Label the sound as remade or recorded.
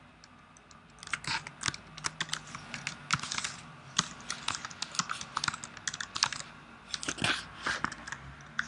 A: recorded